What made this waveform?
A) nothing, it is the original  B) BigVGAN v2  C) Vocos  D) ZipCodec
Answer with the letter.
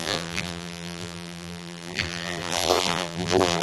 B